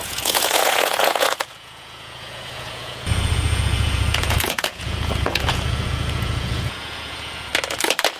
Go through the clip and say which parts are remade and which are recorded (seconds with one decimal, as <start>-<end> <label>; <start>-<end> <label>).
0.0-7.5 remade; 7.5-8.2 recorded